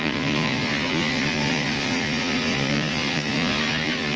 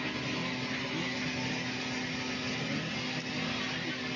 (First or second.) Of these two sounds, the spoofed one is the first